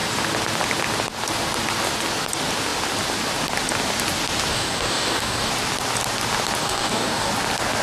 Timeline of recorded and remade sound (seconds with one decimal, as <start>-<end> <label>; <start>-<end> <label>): 0.0-4.5 recorded; 4.5-5.5 remade; 5.5-6.6 recorded; 6.6-7.3 remade; 7.3-7.8 recorded

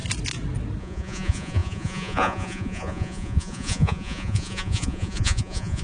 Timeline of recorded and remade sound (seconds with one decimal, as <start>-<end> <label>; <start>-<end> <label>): 0.0-0.8 recorded; 0.8-5.8 remade

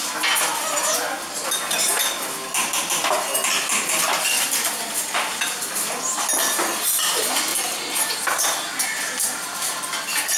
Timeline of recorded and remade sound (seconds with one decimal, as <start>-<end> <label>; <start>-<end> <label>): 0.0-10.4 recorded

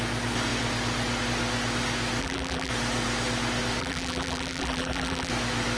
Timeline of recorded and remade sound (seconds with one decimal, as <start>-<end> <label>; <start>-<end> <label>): 0.0-2.2 recorded; 2.2-2.7 remade; 2.7-3.8 recorded; 3.8-5.3 remade; 5.3-5.8 recorded

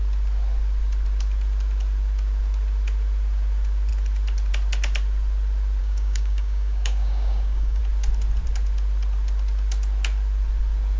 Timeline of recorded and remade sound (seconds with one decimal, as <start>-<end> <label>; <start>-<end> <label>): 0.0-5.8 recorded; 5.8-7.8 remade; 7.8-11.0 recorded

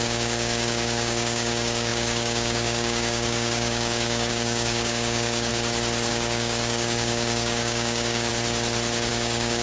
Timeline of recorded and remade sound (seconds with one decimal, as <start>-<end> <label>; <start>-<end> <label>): 0.0-5.5 remade; 5.5-6.1 recorded; 6.1-8.3 remade; 8.3-9.1 recorded; 9.1-9.6 remade